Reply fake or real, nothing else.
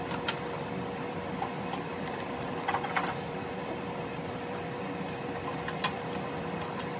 fake